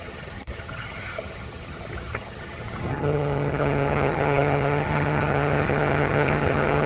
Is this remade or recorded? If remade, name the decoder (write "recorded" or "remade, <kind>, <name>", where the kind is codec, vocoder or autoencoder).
remade, vocoder, HiFi-GAN